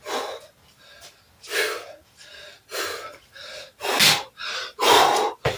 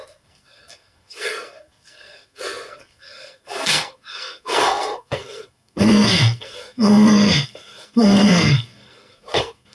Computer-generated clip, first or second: second